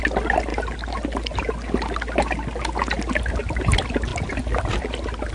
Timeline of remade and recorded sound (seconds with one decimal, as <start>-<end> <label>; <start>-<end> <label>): 0.0-5.3 recorded